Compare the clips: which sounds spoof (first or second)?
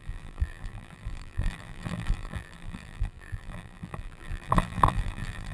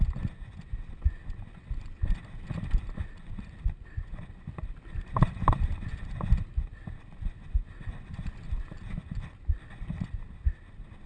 first